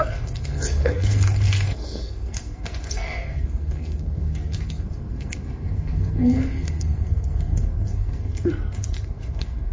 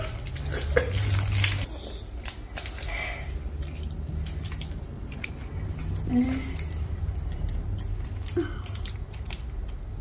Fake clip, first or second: first